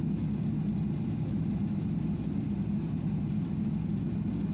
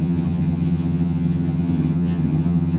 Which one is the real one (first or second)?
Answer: first